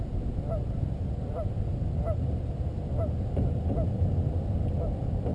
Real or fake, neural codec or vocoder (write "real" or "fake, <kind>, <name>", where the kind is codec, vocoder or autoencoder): real